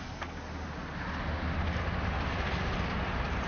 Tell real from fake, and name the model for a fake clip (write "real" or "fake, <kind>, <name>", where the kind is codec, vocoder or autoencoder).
real